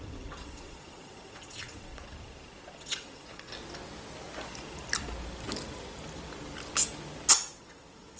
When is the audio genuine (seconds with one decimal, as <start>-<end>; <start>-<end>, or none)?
1.9-2.8; 3.5-7.3